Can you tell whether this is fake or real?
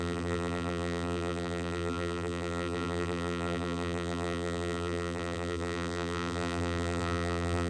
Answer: fake